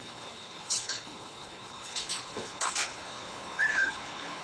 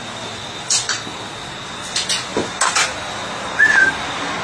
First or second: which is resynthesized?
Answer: first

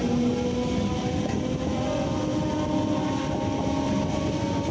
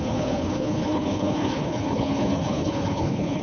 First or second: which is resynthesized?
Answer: second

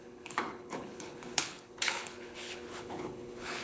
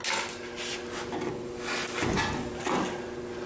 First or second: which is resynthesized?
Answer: first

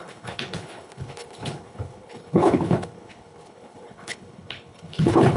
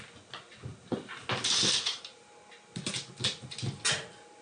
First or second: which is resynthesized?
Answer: first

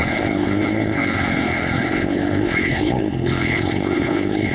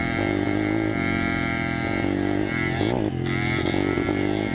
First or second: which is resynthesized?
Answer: first